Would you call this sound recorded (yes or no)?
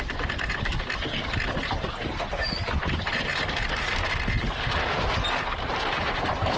yes